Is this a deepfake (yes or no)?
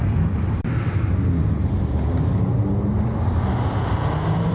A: no